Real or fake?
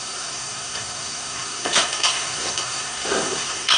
fake